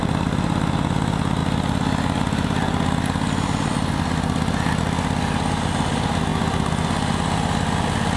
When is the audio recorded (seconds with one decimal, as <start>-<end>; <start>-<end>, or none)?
0.0-8.2